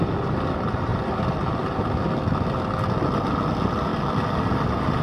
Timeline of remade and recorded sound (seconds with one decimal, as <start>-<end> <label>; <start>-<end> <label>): 0.0-0.9 recorded; 0.9-2.1 remade; 2.1-5.0 recorded

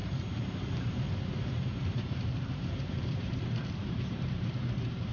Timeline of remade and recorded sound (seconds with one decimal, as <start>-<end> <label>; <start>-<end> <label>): 0.0-0.6 recorded; 0.6-5.1 remade

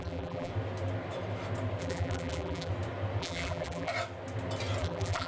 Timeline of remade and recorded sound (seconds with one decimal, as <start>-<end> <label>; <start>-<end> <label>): 0.0-0.5 remade; 0.5-1.8 recorded; 1.8-2.7 remade; 2.7-3.2 recorded; 3.2-3.9 remade; 3.9-4.8 recorded; 4.8-5.3 remade

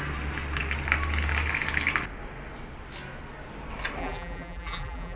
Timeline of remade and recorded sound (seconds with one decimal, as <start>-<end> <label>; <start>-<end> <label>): 0.0-4.0 recorded; 4.0-5.2 remade